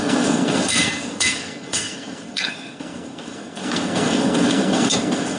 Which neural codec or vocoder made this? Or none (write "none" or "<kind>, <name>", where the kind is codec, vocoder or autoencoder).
codec, SNAC